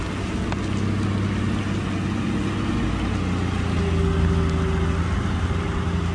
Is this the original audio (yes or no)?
yes